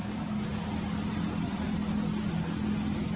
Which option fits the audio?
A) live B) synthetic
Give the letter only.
A